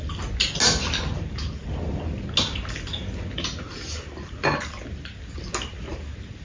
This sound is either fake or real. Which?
real